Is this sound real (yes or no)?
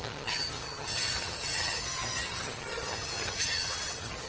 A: no